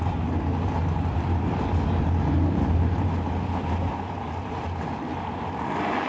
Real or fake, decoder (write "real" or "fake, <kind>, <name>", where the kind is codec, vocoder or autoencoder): real